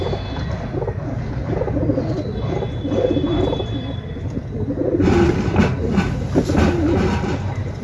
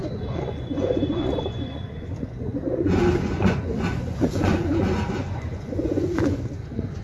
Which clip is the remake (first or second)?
second